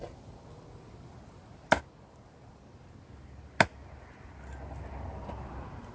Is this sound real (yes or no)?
yes